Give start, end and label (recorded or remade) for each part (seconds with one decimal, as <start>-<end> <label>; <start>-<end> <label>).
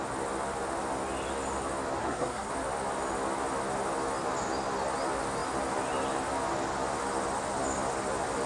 0.0-2.0 recorded; 2.0-2.5 remade; 2.5-8.5 recorded